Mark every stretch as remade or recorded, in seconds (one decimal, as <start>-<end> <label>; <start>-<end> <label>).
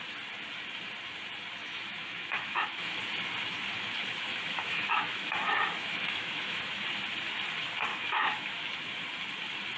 0.0-1.6 recorded; 1.6-3.0 remade; 3.0-4.3 recorded; 4.3-6.6 remade; 6.6-7.9 recorded; 7.9-8.6 remade; 8.6-9.8 recorded